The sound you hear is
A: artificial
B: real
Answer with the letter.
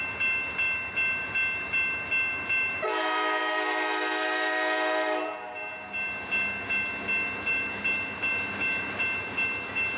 B